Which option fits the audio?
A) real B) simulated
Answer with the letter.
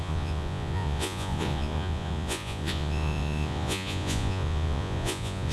B